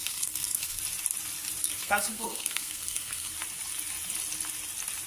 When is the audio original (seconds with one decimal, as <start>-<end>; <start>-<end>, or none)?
0.8-1.6; 3.3-5.1